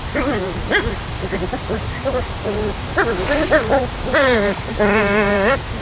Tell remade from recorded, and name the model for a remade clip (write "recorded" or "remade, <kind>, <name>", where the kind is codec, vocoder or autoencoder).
remade, vocoder, BigVGAN v2